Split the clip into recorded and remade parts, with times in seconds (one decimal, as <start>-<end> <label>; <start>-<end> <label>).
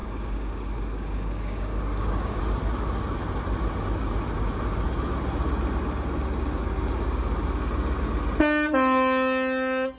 0.0-2.4 remade; 2.4-10.0 recorded